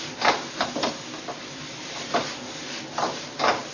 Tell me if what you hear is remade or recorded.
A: recorded